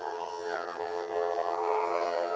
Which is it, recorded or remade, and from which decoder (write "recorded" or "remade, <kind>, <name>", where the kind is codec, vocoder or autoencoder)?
remade, vocoder, HiFi-GAN